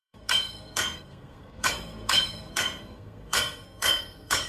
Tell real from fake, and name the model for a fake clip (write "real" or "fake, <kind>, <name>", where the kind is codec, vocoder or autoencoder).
fake, codec, SNAC